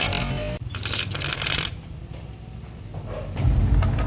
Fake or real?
real